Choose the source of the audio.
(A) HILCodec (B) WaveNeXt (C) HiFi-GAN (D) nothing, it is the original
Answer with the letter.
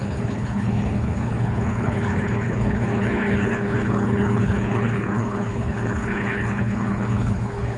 A